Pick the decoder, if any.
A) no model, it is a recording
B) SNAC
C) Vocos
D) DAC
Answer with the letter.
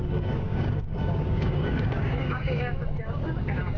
D